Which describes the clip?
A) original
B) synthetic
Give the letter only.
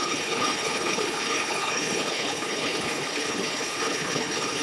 B